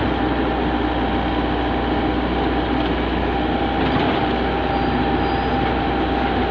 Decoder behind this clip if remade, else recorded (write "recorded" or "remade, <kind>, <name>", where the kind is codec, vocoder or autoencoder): recorded